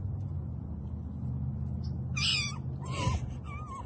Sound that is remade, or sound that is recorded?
recorded